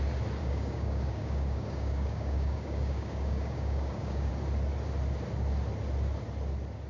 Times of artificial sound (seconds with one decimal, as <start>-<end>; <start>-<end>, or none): 0.4-4.3